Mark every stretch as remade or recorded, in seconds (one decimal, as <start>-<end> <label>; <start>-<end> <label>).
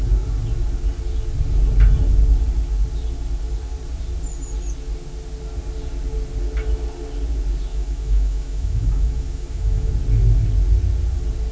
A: 0.0-7.7 recorded; 7.7-9.9 remade; 9.9-11.5 recorded